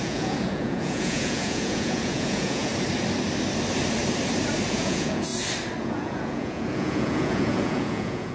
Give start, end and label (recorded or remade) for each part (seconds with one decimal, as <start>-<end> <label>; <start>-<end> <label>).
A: 0.0-2.7 remade; 2.7-4.7 recorded; 4.7-5.3 remade; 5.3-5.8 recorded; 5.8-8.3 remade